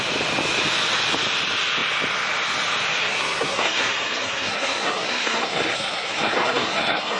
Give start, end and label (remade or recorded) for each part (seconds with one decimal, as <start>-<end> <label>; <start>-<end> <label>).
0.0-3.0 recorded; 3.0-7.2 remade